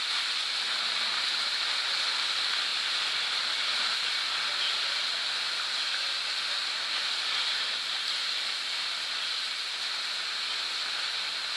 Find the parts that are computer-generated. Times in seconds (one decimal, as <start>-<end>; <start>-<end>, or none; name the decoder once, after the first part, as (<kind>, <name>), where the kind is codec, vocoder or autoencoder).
none